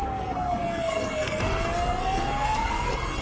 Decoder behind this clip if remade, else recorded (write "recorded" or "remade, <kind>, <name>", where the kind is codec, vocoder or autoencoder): remade, codec, SNAC